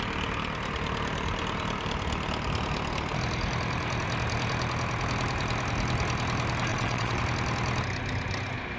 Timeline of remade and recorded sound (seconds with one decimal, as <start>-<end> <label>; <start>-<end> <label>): 0.0-6.7 recorded; 6.7-7.2 remade; 7.2-8.8 recorded